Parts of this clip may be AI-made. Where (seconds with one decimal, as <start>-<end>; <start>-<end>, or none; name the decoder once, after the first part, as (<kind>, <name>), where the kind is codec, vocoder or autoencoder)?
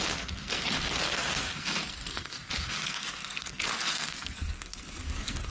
0.0-5.5 (codec, SNAC)